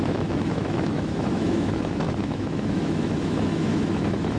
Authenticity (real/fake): fake